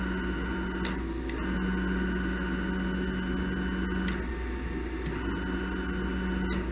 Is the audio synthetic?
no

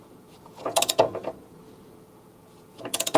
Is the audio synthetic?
yes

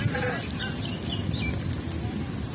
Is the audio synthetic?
no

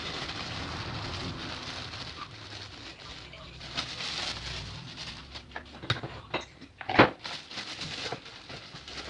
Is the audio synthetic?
no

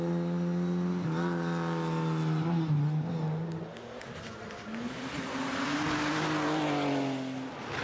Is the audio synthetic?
no